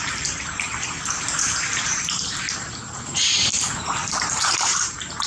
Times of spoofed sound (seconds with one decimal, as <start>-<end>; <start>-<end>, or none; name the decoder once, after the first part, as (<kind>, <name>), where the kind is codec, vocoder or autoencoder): 0.0-3.5 (vocoder, BigVGAN v2); 4.5-5.3